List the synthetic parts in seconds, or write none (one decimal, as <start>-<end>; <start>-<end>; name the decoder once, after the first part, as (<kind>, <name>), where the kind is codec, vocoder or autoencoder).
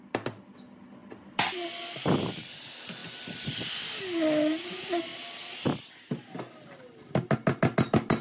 3.0-4.0 (vocoder, BigVGAN v2); 5.1-5.9